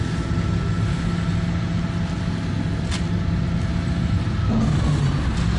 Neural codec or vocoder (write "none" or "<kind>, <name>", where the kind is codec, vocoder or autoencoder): none